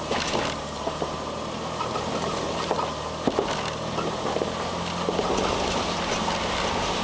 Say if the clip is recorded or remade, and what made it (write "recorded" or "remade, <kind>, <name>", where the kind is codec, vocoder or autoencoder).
recorded